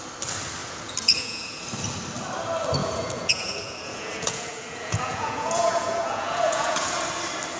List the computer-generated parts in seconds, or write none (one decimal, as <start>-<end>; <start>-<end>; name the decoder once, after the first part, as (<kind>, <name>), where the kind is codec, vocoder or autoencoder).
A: 0.6-1.6 (vocoder, Vocos); 2.8-7.0